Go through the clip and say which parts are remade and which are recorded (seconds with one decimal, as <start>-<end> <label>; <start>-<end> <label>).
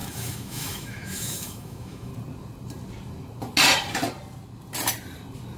0.0-2.1 remade; 2.1-5.6 recorded